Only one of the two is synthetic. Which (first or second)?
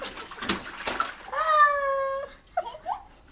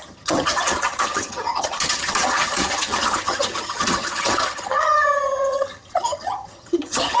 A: second